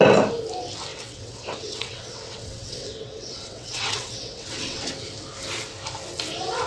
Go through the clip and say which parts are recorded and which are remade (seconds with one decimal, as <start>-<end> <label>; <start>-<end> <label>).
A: 0.0-0.9 recorded; 0.9-4.9 remade; 4.9-6.7 recorded